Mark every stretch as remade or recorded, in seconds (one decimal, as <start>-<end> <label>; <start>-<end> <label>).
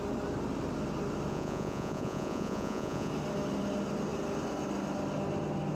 0.0-1.3 recorded; 1.3-3.1 remade; 3.1-5.7 recorded